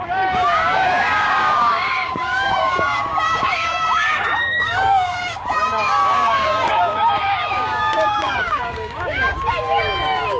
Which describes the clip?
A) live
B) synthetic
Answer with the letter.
B